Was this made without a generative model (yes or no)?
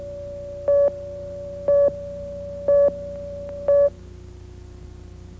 yes